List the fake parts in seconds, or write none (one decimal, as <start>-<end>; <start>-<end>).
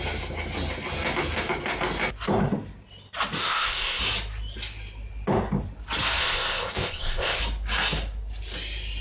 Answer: 3.4-4.0; 6.2-7.4